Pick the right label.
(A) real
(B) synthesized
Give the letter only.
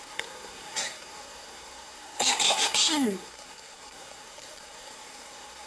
B